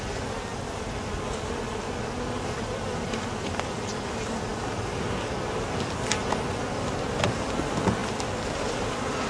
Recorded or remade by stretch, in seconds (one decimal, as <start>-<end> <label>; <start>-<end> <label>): 0.0-9.3 recorded

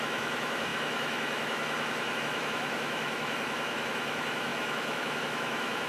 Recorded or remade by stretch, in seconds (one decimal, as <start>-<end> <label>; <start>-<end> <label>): 0.0-5.9 remade

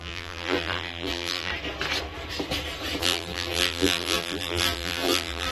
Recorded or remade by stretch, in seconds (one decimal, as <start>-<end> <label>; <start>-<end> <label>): 0.0-1.5 remade; 1.5-3.0 recorded; 3.0-5.5 remade

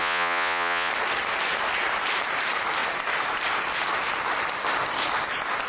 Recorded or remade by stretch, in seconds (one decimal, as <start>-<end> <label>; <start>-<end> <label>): 0.0-0.9 remade; 0.9-5.7 recorded

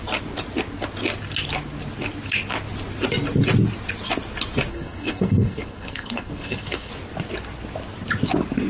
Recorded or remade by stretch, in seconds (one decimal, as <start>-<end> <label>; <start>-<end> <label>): 0.0-4.7 recorded; 4.7-6.9 remade; 6.9-8.7 recorded

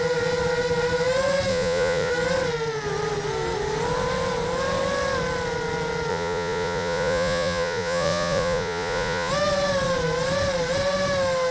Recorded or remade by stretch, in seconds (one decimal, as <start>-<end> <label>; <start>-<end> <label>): 0.0-1.5 recorded; 1.5-2.1 remade; 2.1-6.1 recorded; 6.1-9.3 remade; 9.3-11.5 recorded

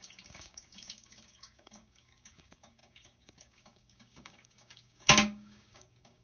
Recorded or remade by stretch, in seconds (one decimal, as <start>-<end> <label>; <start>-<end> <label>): 0.0-6.2 remade

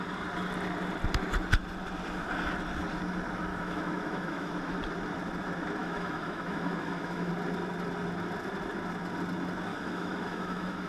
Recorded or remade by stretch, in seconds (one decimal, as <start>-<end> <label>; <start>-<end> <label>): 0.0-3.5 recorded; 3.5-4.5 remade; 4.5-5.8 recorded; 5.8-7.3 remade; 7.3-9.7 recorded; 9.7-10.9 remade